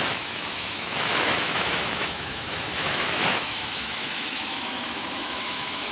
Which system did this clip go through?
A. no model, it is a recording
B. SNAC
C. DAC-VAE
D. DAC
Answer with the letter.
C